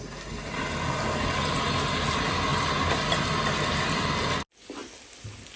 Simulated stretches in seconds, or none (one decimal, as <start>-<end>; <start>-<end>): none